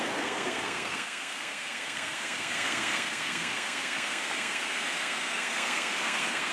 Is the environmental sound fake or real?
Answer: fake